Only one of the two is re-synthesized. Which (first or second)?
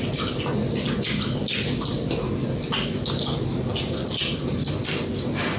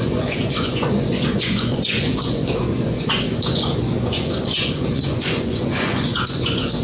second